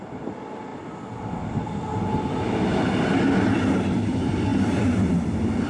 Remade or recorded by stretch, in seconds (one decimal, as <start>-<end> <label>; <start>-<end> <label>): 0.0-0.7 remade; 0.7-3.8 recorded; 3.8-5.7 remade